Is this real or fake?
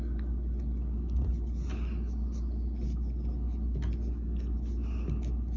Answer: real